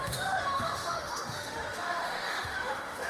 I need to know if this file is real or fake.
fake